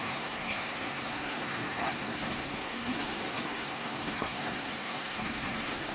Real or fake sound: fake